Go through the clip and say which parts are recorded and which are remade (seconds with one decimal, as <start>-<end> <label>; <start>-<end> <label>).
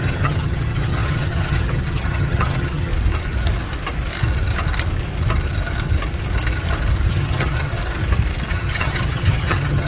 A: 0.0-2.9 remade; 2.9-7.1 recorded; 7.1-7.8 remade; 7.8-8.5 recorded; 8.5-9.9 remade